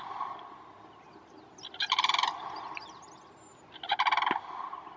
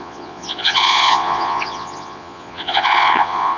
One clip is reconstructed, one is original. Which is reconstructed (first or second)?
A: second